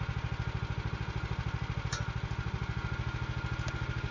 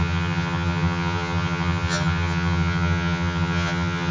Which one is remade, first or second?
second